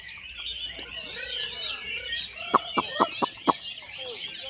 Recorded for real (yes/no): yes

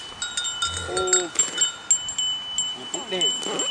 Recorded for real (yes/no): yes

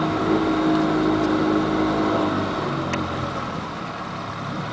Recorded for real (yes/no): yes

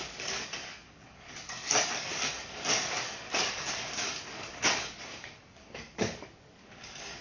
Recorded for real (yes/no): no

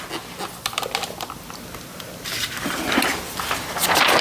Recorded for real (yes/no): yes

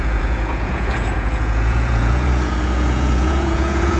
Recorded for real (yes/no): no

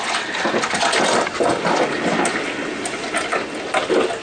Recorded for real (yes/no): yes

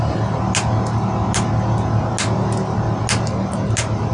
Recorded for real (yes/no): yes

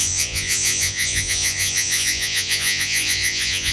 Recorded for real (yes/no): no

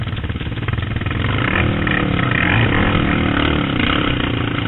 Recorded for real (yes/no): yes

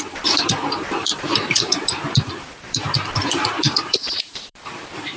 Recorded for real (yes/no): no